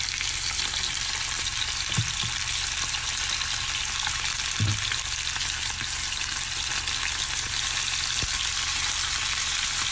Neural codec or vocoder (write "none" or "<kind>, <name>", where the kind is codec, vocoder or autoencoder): none